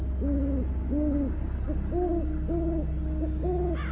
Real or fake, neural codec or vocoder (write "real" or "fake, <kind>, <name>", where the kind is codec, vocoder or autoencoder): real